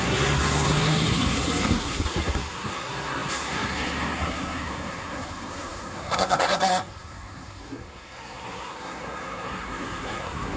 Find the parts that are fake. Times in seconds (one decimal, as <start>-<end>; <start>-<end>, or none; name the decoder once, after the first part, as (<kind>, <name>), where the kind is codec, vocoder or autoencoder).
0.0-10.6 (codec, SNAC)